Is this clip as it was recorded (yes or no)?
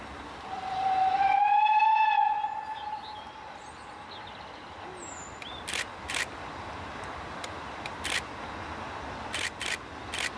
yes